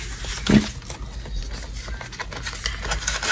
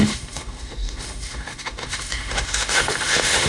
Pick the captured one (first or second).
first